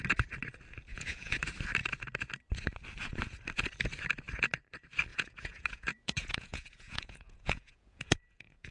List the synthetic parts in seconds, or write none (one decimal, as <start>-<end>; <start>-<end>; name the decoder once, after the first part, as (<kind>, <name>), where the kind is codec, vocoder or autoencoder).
0.9-1.4 (vocoder, Vocos); 5.1-8.7